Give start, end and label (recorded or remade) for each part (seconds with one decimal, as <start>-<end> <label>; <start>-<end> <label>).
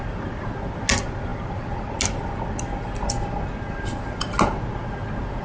0.0-5.4 recorded